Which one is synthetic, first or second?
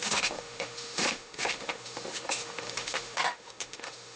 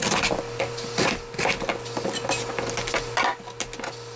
first